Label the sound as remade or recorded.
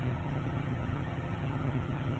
remade